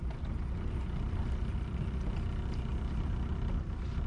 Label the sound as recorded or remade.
recorded